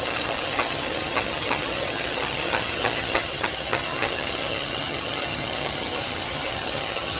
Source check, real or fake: fake